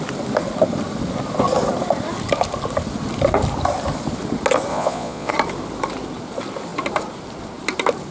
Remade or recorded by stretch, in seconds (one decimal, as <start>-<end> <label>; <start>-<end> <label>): 0.0-4.7 recorded; 4.7-5.3 remade; 5.3-8.1 recorded